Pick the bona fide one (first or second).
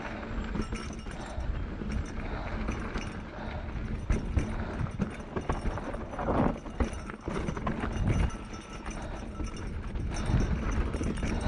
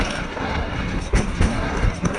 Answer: first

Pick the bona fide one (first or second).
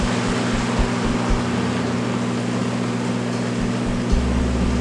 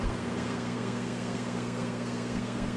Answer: first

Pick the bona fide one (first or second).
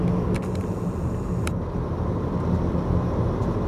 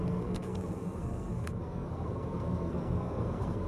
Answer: first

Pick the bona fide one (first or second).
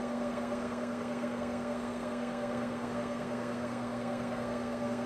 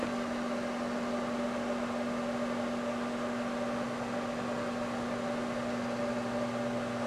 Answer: second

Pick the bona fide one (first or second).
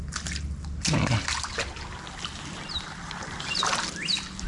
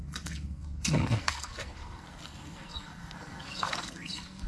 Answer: first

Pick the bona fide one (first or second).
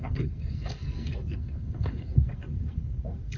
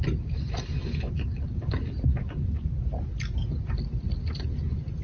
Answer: second